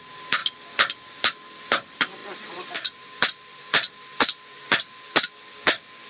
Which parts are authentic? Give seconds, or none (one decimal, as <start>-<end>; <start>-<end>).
0.0-0.4; 1.2-6.1